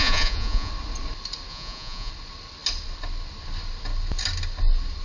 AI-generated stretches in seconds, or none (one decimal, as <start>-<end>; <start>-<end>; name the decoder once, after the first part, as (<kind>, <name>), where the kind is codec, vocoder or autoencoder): 0.0-0.7 (vocoder, Vocos); 1.5-2.1